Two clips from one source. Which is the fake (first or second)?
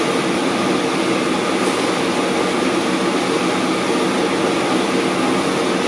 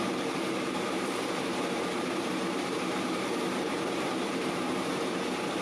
second